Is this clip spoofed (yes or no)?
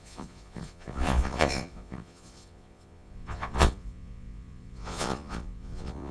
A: yes